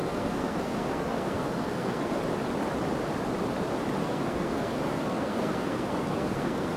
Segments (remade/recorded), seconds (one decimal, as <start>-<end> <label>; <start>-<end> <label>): 0.0-2.2 remade; 2.2-4.0 recorded; 4.0-6.8 remade

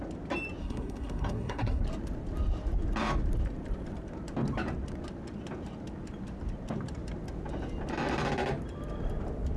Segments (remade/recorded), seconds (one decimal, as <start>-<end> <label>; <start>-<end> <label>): 0.0-0.6 recorded; 0.6-1.8 remade; 1.8-9.6 recorded

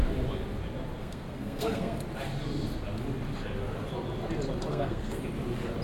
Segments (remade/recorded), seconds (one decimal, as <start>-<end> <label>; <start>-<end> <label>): 0.0-1.0 recorded; 1.0-2.0 remade; 2.0-4.7 recorded; 4.7-5.2 remade; 5.2-5.8 recorded

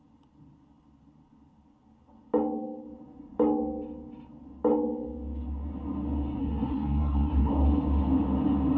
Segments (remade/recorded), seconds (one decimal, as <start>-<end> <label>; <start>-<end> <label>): 0.0-6.4 recorded; 6.4-7.5 remade; 7.5-8.8 recorded

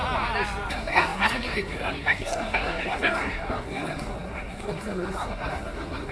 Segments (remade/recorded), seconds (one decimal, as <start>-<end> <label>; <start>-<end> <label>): 0.0-0.7 recorded; 0.7-6.1 remade

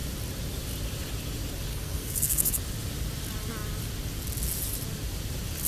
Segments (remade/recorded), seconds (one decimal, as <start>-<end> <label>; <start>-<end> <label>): 0.0-1.7 recorded; 1.7-2.6 remade; 2.6-5.7 recorded

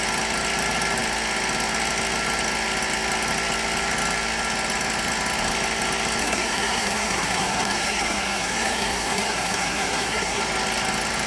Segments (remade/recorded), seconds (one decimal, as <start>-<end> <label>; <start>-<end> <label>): 0.0-6.2 recorded; 6.2-10.4 remade; 10.4-11.3 recorded